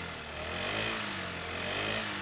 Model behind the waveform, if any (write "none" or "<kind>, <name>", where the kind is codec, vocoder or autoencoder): none